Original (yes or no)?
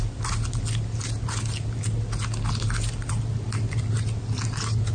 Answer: yes